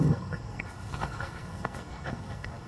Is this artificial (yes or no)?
yes